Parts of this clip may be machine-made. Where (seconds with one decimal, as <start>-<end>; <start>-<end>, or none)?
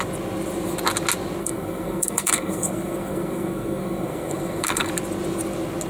1.4-4.9